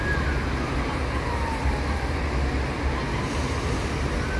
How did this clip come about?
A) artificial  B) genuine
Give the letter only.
B